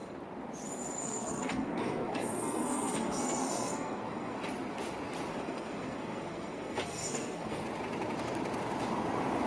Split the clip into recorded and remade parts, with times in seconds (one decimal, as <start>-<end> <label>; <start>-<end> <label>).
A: 0.0-1.0 recorded; 1.0-4.4 remade; 4.4-5.3 recorded; 5.3-7.6 remade; 7.6-9.5 recorded